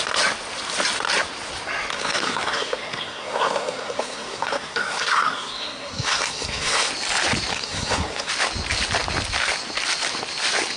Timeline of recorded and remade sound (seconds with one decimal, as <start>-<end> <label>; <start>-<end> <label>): 0.0-1.9 recorded; 1.9-6.9 remade; 6.9-7.5 recorded; 7.5-8.3 remade; 8.3-10.8 recorded